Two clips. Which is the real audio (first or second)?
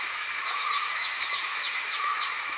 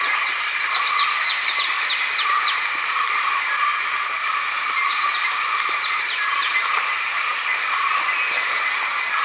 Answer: second